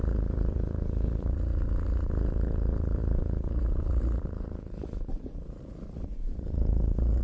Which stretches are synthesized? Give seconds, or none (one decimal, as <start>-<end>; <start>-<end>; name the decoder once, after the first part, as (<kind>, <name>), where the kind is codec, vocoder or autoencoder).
0.0-7.2 (vocoder, Vocos)